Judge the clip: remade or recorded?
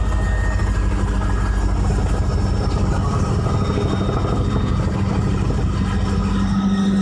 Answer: recorded